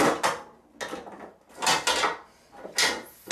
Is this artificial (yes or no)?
no